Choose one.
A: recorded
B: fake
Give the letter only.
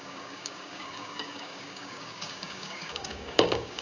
B